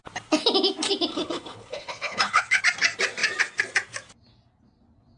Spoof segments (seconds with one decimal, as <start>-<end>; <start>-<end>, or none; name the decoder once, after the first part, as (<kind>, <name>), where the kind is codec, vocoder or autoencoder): 1.1-2.6 (codec, HILCodec)